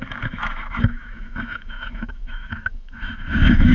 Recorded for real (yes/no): no